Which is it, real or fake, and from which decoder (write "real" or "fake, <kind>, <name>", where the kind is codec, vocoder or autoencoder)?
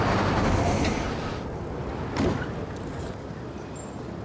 real